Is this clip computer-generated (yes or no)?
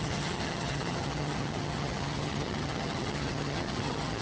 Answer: yes